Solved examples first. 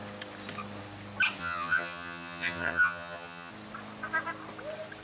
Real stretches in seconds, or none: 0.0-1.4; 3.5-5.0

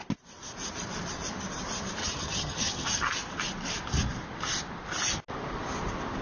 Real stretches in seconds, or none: 0.0-2.0; 3.1-6.2

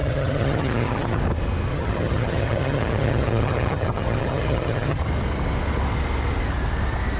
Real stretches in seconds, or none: 1.2-1.7; 5.0-7.2

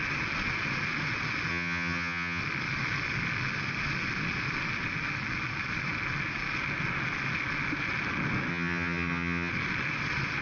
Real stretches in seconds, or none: 0.0-1.5; 2.4-8.5; 9.5-10.4

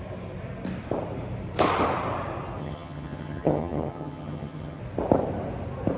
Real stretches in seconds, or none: 0.0-2.6; 4.8-6.0